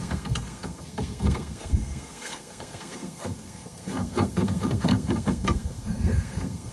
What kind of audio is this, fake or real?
fake